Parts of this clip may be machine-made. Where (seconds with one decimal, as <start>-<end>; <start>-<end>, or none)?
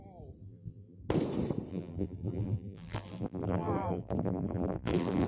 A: 0.4-1.0; 1.7-5.3